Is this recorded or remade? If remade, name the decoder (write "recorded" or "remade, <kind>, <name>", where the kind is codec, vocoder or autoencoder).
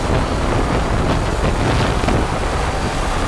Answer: recorded